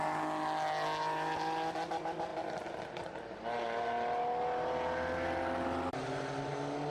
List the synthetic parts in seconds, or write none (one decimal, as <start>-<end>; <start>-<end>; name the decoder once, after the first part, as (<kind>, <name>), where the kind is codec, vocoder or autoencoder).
none